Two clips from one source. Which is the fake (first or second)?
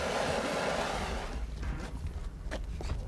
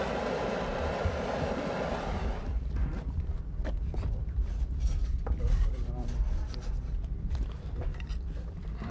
second